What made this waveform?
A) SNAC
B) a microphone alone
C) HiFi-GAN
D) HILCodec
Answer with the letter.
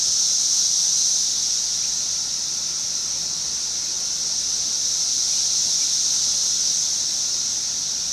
B